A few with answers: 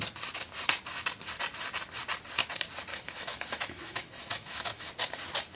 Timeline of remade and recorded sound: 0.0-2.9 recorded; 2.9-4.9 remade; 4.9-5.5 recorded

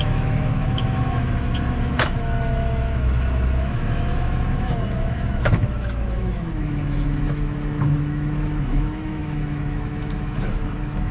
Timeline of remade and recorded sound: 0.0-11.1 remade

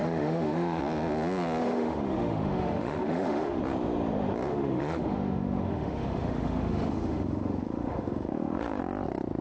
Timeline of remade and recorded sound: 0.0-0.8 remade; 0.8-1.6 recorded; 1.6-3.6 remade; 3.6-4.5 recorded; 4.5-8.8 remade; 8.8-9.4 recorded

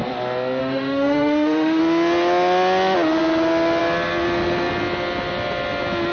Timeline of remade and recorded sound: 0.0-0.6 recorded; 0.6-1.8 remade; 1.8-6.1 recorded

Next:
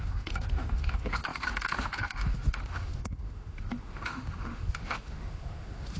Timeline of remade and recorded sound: 0.0-6.0 remade